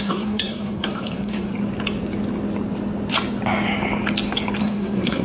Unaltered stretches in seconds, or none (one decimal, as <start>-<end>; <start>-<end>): 1.5-4.6